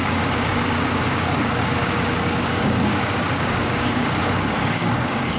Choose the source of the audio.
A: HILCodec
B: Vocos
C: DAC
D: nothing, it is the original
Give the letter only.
C